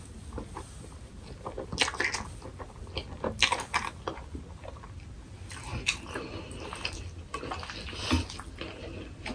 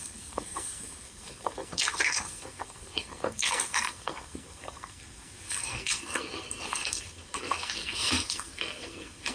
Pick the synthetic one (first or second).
second